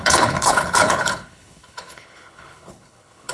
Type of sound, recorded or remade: remade